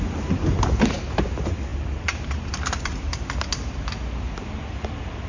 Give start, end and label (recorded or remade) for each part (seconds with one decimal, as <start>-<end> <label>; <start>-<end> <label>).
0.0-1.7 recorded; 1.7-3.2 remade; 3.2-5.3 recorded